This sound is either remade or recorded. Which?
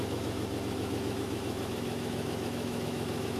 remade